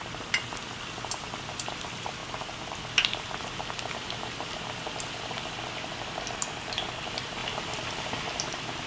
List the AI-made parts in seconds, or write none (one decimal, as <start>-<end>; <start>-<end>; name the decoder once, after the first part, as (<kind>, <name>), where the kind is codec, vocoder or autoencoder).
none